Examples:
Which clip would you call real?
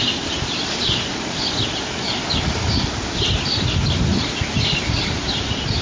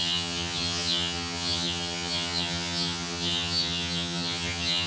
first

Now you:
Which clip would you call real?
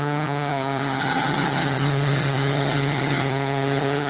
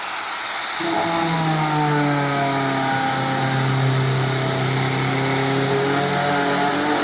second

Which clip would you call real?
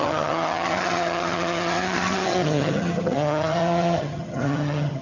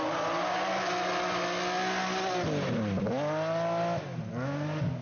second